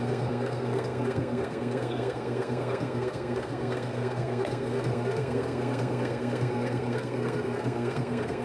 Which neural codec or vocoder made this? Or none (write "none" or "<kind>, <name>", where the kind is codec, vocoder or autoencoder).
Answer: codec, SNAC